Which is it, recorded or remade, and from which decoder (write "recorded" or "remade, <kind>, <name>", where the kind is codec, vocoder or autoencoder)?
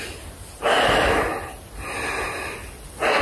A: recorded